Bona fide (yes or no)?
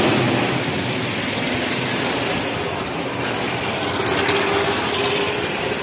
yes